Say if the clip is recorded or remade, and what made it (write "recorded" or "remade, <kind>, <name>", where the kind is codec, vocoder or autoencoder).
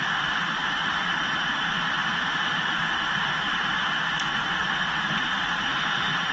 remade, vocoder, BigVGAN v2